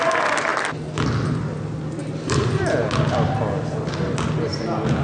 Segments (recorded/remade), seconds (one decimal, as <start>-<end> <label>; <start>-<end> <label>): 0.0-2.0 recorded; 2.0-2.6 remade; 2.6-5.0 recorded

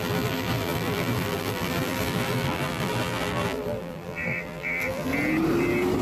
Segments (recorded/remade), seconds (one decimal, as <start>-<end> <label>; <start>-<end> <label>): 0.0-5.1 remade; 5.1-6.0 recorded

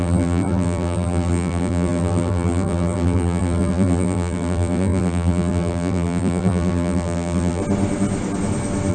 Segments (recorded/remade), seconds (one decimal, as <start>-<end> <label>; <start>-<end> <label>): 0.0-7.6 remade; 7.6-8.9 recorded

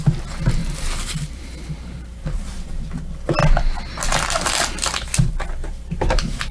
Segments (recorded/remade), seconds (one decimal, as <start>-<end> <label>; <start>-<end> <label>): 0.0-0.6 recorded; 0.6-2.7 remade; 2.7-5.6 recorded; 5.6-6.5 remade

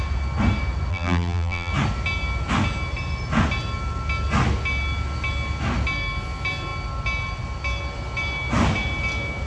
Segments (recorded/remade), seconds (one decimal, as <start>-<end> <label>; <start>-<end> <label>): 0.0-0.9 recorded; 0.9-1.7 remade; 1.7-9.5 recorded

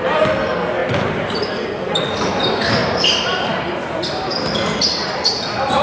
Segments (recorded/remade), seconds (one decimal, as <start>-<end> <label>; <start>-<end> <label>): 0.0-0.8 recorded; 0.8-2.0 remade; 2.0-2.8 recorded; 2.8-3.8 remade; 3.8-5.8 recorded

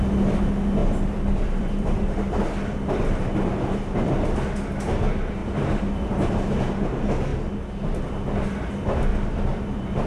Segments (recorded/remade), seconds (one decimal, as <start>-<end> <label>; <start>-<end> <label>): 0.0-0.8 recorded; 0.8-2.4 remade; 2.4-5.4 recorded; 5.4-6.5 remade; 6.5-9.1 recorded; 9.1-10.1 remade